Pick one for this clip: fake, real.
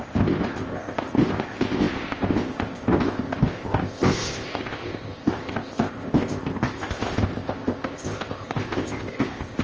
fake